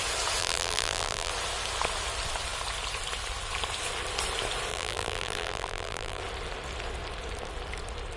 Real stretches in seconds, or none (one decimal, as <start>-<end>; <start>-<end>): 0.0-0.4; 1.3-4.7; 6.2-8.2

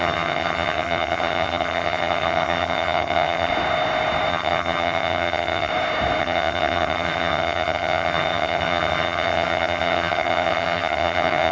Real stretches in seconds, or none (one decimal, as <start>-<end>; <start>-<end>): 3.5-4.3; 5.7-6.2

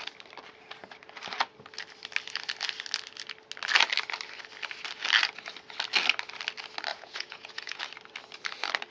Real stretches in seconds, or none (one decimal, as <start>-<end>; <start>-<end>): 0.0-6.9; 7.8-8.9